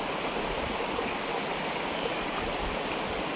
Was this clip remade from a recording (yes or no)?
no